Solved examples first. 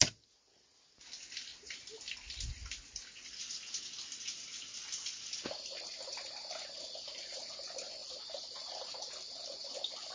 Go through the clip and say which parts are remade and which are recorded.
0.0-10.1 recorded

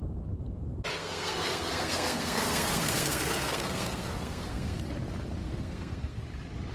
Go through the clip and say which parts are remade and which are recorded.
0.0-0.9 recorded; 0.9-4.9 remade; 4.9-5.4 recorded; 5.4-6.2 remade; 6.2-6.7 recorded

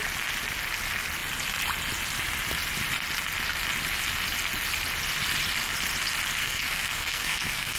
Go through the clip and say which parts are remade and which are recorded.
0.0-6.4 recorded; 6.4-7.8 remade

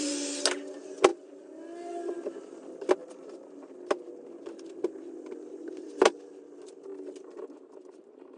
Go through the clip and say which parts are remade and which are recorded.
0.0-8.4 recorded

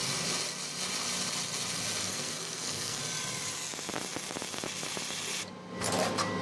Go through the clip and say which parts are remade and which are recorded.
0.0-2.0 recorded; 2.0-3.0 remade; 3.0-6.4 recorded

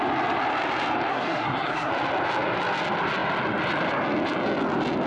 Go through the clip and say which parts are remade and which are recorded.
0.0-1.1 recorded; 1.1-1.9 remade; 1.9-5.1 recorded